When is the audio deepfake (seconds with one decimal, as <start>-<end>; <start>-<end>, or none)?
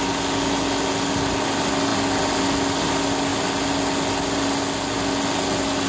none